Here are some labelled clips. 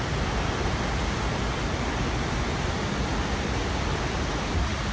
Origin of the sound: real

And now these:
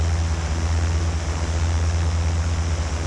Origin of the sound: real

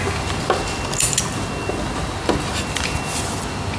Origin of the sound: real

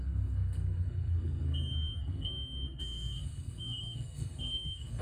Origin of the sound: fake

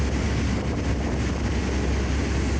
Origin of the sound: real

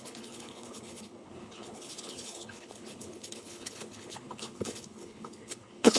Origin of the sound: fake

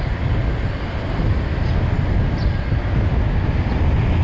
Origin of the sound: real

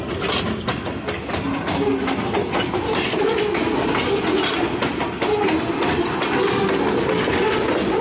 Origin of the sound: real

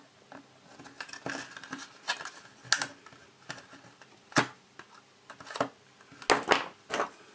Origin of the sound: real